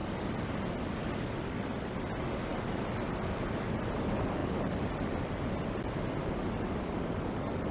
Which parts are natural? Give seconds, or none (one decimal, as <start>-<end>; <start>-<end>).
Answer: 0.0-4.4; 5.5-7.7